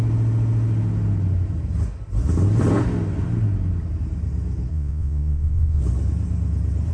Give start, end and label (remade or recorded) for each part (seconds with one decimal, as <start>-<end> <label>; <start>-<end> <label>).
0.0-4.7 recorded; 4.7-5.8 remade; 5.8-6.9 recorded